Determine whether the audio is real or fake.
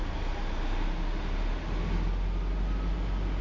real